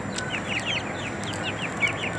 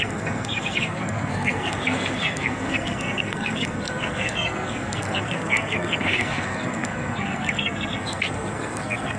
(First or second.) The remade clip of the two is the second